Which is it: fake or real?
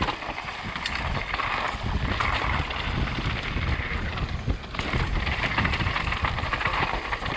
real